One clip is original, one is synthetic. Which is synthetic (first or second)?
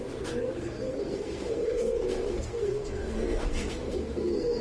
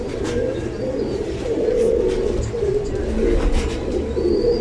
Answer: first